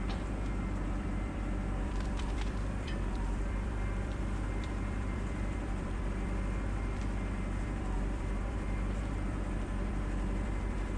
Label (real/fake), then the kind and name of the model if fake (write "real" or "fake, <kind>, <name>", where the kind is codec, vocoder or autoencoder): fake, vocoder, BigVGAN v2